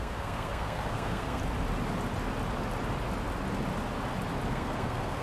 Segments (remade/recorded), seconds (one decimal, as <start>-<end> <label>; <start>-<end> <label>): 0.0-1.4 remade; 1.4-4.5 recorded; 4.5-5.2 remade